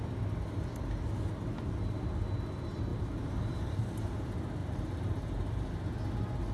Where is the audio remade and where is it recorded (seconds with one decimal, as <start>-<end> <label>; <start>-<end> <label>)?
0.0-2.9 recorded; 2.9-3.8 remade; 3.8-4.6 recorded; 4.6-5.7 remade; 5.7-6.5 recorded